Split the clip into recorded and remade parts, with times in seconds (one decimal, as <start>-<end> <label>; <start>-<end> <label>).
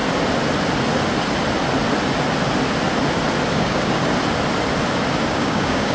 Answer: 0.0-3.5 recorded; 3.5-4.0 remade; 4.0-5.3 recorded; 5.3-5.9 remade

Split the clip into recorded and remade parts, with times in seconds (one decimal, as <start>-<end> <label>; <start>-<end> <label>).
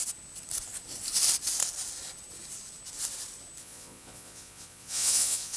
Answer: 0.0-3.6 recorded; 3.6-5.6 remade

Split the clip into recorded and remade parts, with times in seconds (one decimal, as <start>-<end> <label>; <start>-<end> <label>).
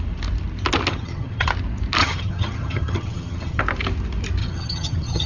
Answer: 0.0-0.9 recorded; 0.9-1.5 remade; 1.5-2.0 recorded; 2.0-3.6 remade; 3.6-4.4 recorded; 4.4-5.3 remade